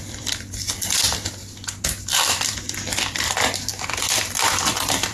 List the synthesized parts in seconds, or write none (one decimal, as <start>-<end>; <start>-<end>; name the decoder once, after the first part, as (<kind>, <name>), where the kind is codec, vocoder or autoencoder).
0.0-1.4 (vocoder, BigVGAN v2); 2.0-5.1